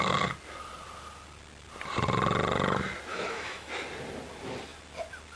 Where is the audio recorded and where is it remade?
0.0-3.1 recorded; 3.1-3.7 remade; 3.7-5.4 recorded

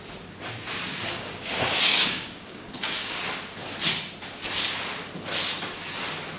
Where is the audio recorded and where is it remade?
0.0-0.9 recorded; 0.9-3.2 remade; 3.2-6.4 recorded

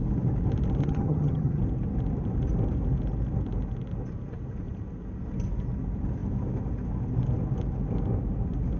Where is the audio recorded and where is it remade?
0.0-0.8 recorded; 0.8-1.6 remade; 1.6-8.8 recorded

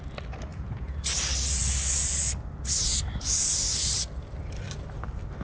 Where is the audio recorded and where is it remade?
0.0-0.5 recorded; 0.5-1.0 remade; 1.0-5.4 recorded

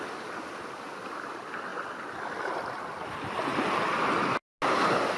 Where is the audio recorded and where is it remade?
0.0-5.2 recorded

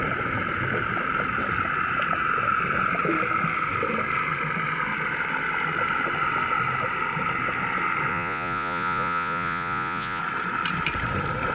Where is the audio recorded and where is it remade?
0.0-8.1 recorded; 8.1-10.2 remade; 10.2-11.5 recorded

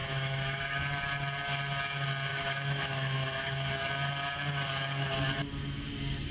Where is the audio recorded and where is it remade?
0.0-0.8 remade; 0.8-2.3 recorded; 2.3-3.9 remade; 3.9-6.3 recorded

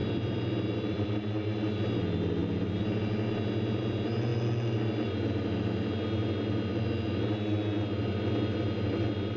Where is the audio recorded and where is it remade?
0.0-1.1 remade; 1.1-9.4 recorded